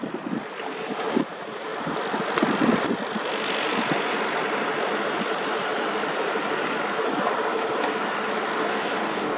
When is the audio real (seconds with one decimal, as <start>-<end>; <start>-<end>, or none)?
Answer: 0.0-8.6